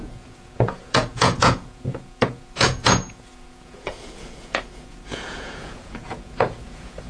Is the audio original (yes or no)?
no